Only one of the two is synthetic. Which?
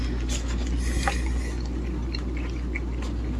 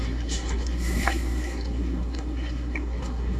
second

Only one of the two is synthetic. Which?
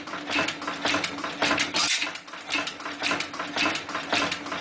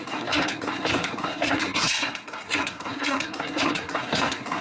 second